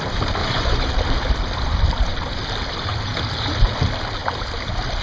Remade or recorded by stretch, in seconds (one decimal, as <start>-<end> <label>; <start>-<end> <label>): 0.0-0.4 recorded; 0.4-0.9 remade; 0.9-5.0 recorded